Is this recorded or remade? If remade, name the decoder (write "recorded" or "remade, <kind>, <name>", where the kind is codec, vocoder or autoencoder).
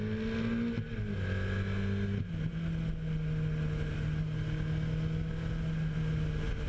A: recorded